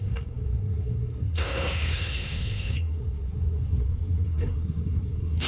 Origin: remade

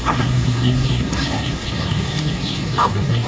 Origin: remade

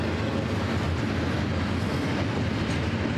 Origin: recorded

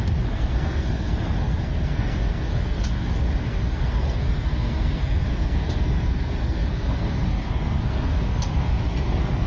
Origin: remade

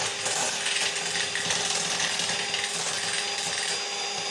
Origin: recorded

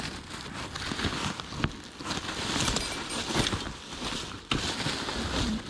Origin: recorded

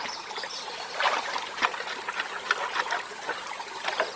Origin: recorded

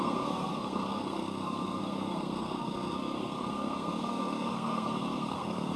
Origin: remade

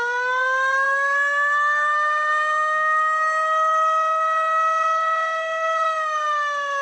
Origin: remade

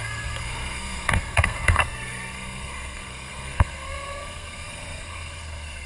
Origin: remade